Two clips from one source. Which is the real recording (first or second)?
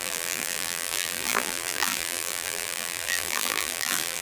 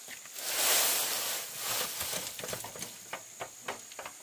second